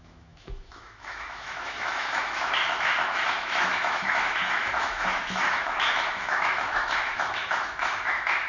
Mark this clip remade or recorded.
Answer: remade